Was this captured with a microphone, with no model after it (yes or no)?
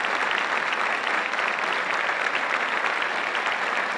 yes